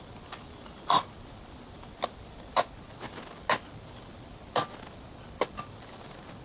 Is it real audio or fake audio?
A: real